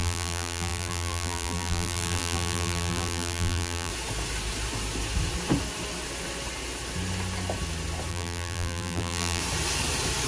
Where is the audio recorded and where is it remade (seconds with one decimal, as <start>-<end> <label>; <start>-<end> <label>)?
0.0-3.9 remade; 3.9-8.1 recorded; 8.1-9.4 remade; 9.4-10.3 recorded